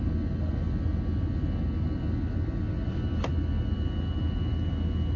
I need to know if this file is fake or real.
real